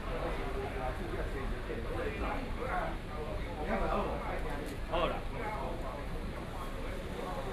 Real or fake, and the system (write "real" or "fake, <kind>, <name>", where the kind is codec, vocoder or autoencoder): real